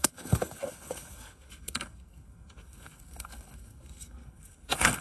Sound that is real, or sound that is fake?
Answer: fake